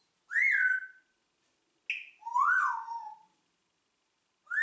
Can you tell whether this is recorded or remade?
recorded